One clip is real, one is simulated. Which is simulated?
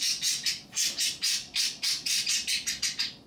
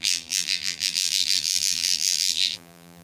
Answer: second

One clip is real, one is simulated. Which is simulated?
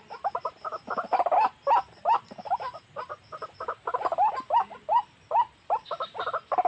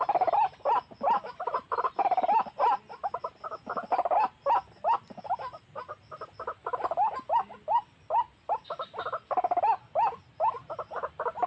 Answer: first